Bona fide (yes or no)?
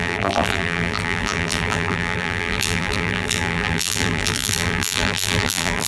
no